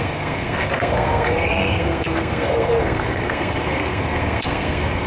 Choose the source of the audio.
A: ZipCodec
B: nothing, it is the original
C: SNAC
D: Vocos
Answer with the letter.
C